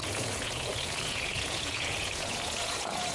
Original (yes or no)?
no